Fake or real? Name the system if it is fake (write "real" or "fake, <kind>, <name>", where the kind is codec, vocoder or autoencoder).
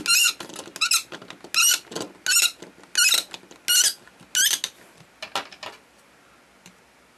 real